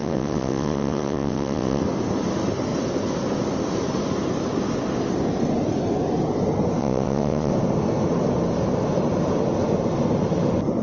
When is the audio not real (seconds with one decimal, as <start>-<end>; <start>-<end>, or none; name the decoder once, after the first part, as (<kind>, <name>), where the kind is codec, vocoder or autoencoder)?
0.0-1.8 (vocoder, WaveNeXt); 6.8-7.5